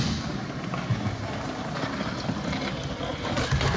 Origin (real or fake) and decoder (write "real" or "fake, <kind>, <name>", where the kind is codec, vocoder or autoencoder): real